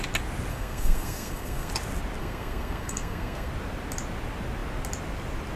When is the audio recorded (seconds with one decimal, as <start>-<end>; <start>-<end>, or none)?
0.0-0.5; 1.7-2.2; 3.5-5.6